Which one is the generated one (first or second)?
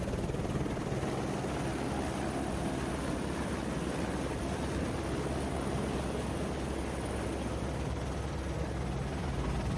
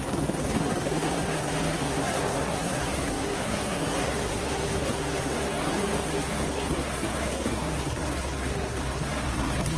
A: second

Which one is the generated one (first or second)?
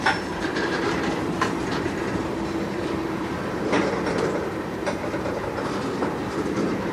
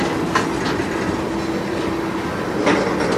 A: first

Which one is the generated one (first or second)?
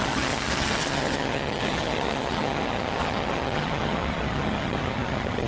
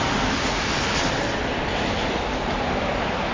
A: first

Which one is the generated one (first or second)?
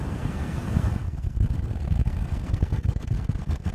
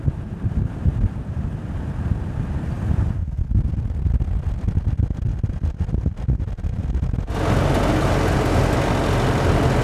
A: first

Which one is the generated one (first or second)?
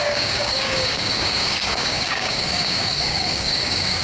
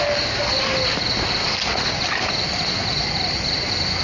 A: first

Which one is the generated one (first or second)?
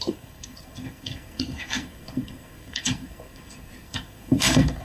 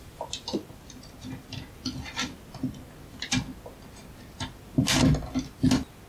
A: first